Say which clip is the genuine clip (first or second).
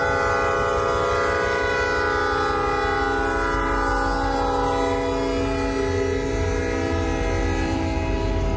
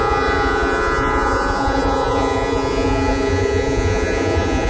first